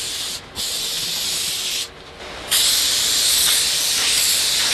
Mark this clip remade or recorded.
recorded